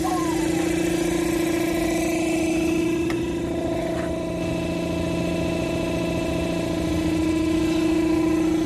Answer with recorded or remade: recorded